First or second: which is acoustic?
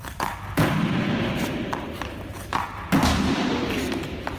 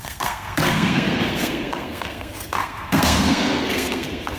first